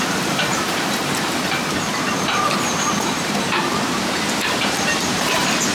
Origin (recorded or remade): remade